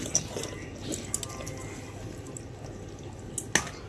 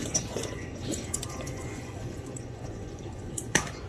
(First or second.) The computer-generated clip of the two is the second